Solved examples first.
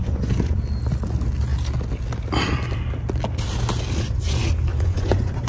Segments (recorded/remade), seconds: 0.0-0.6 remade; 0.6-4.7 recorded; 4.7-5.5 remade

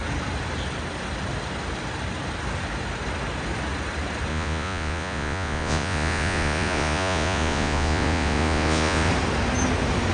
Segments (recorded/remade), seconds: 0.0-4.3 recorded; 4.3-9.1 remade; 9.1-10.1 recorded

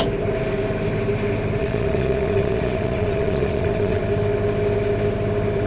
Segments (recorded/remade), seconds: 0.0-1.6 recorded; 1.6-4.0 remade; 4.0-5.7 recorded

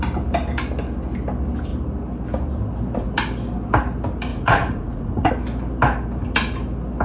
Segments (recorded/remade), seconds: 0.0-4.3 recorded; 4.3-5.3 remade; 5.3-7.0 recorded

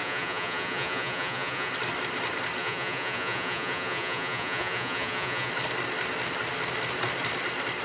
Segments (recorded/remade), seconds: 0.0-1.7 remade; 1.7-2.6 recorded; 2.6-5.5 remade; 5.5-7.8 recorded

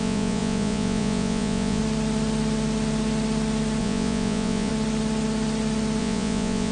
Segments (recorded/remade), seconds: 0.0-1.8 remade; 1.8-3.8 recorded; 3.8-4.7 remade; 4.7-6.0 recorded; 6.0-6.7 remade